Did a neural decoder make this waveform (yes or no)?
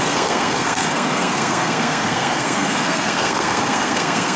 yes